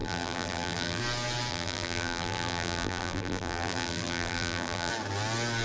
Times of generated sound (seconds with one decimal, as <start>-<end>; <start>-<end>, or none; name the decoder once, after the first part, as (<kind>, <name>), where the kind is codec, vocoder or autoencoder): 0.0-1.0 (vocoder, BigVGAN v2); 1.5-4.9